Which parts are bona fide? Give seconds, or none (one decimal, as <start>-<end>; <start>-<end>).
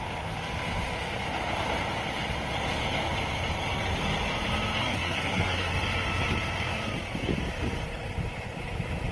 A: 0.0-4.8; 5.7-9.1